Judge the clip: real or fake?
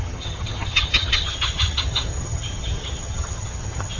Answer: fake